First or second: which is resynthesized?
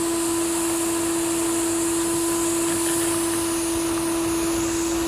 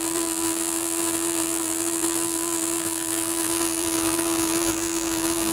second